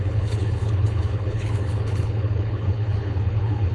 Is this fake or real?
fake